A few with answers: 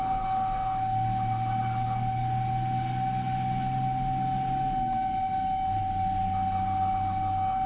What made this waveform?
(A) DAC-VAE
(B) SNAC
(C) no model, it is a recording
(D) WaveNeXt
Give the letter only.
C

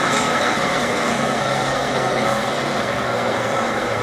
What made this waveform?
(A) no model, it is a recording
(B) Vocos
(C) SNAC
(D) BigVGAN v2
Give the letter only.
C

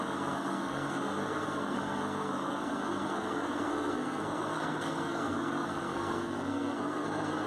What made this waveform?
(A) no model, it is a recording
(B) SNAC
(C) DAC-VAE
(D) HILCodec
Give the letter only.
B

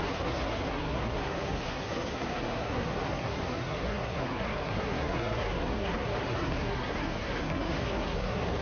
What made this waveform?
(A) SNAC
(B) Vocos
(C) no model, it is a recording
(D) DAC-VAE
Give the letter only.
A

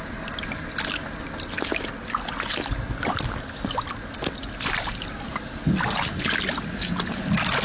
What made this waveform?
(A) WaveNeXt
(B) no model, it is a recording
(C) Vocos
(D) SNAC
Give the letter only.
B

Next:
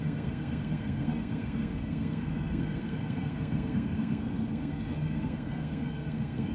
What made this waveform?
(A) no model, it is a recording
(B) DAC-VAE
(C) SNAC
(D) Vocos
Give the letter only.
C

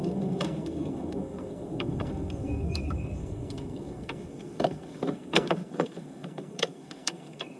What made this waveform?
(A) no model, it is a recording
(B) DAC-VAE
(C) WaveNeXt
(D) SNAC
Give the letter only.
D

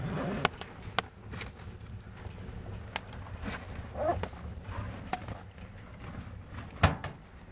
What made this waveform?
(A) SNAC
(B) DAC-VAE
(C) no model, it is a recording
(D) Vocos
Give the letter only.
C